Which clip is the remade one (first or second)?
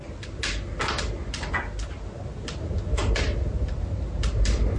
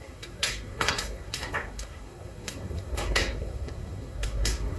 second